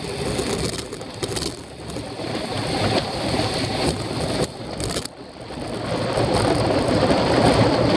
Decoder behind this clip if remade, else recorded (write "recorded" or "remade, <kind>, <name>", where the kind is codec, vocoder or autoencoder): recorded